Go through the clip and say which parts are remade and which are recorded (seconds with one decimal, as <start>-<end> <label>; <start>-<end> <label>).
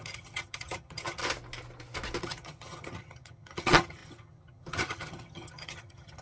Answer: 0.0-1.2 remade; 1.2-2.2 recorded; 2.2-6.2 remade